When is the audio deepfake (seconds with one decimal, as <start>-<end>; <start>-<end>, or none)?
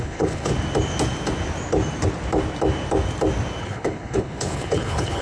0.0-0.5; 3.6-5.2